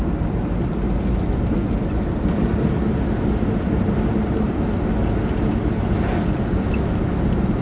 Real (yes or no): yes